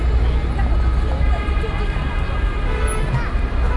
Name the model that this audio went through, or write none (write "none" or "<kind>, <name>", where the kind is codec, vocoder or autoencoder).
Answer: none